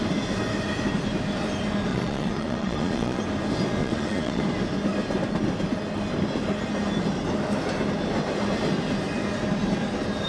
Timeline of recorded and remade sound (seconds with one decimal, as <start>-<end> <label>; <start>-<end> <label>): 0.0-1.9 recorded; 1.9-3.2 remade; 3.2-3.8 recorded; 3.8-4.4 remade; 4.4-10.3 recorded